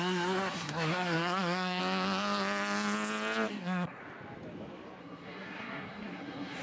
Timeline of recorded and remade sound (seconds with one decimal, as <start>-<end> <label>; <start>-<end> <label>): 0.0-1.8 remade; 1.8-3.5 recorded; 3.5-4.0 remade; 4.0-5.0 recorded; 5.0-6.6 remade